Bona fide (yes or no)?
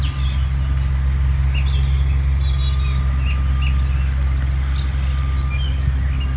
yes